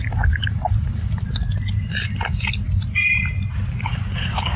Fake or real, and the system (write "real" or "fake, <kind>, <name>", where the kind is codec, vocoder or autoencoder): real